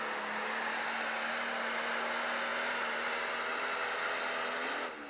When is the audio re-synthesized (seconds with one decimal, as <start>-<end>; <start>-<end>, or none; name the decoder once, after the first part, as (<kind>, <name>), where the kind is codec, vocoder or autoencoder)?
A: none